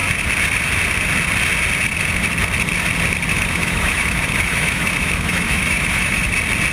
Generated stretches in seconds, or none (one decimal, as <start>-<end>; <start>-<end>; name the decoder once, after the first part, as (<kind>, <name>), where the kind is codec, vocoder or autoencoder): 3.3-6.2 (autoencoder, DAC-VAE)